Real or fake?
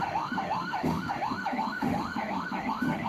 fake